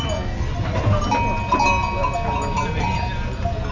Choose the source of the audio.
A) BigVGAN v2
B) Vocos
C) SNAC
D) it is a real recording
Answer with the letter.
D